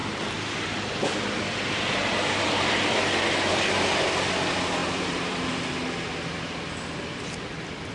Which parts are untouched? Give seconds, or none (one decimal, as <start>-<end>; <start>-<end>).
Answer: 0.0-4.8; 5.5-7.9